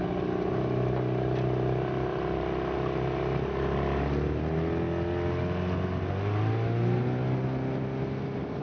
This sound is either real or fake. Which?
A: real